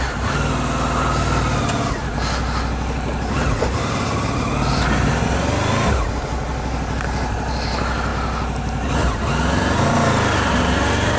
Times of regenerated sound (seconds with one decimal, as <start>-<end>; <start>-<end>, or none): none